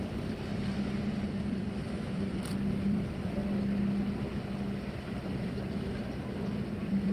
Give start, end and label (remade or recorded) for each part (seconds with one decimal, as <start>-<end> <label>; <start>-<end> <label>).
0.0-0.5 remade; 0.5-1.0 recorded; 1.0-3.4 remade; 3.4-5.1 recorded; 5.1-7.1 remade